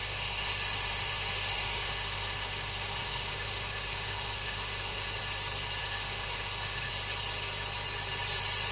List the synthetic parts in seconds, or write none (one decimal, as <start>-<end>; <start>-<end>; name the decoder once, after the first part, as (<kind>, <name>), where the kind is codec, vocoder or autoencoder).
0.0-5.2 (autoencoder, DAC-VAE); 5.8-6.9